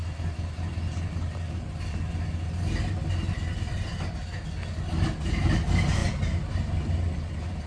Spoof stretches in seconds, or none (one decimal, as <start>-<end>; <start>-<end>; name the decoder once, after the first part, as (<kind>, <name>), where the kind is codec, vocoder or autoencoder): none

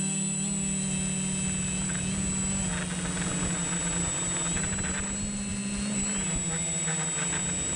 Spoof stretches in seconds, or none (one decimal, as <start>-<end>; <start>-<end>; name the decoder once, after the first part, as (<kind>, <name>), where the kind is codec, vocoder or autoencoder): none